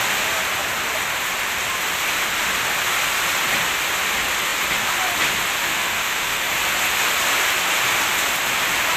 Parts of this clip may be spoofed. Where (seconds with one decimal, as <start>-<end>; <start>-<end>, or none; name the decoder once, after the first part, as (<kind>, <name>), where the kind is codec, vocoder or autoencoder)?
5.6-6.5 (autoencoder, DAC-VAE)